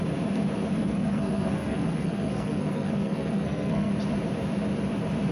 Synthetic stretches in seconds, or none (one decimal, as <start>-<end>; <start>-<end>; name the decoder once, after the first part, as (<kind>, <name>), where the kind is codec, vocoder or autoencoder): 0.7-3.9 (codec, SNAC)

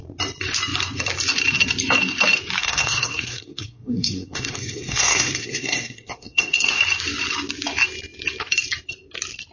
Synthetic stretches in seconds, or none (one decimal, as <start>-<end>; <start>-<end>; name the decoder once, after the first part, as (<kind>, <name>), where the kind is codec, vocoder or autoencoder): 2.6-6.8 (codec, SNAC)

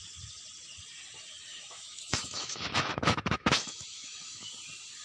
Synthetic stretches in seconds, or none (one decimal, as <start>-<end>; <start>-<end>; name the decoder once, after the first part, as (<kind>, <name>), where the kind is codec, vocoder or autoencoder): 1.5-4.5 (autoencoder, DAC-VAE)

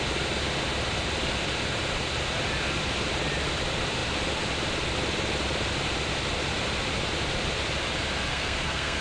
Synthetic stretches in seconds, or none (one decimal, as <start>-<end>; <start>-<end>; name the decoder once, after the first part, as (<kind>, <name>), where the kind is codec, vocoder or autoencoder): 8.3-9.0 (codec, SNAC)

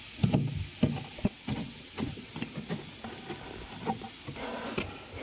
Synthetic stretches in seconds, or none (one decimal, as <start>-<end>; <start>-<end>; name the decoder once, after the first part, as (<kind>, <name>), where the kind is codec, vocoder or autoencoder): 1.1-2.3 (vocoder, WaveNeXt)

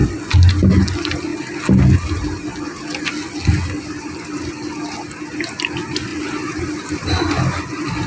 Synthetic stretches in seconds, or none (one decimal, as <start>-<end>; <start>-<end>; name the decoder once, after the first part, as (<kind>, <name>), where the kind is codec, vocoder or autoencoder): none

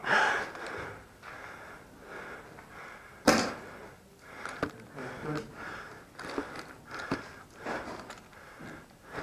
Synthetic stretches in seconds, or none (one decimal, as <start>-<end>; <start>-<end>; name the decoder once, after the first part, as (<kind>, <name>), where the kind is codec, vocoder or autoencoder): none